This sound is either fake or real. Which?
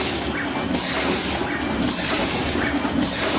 real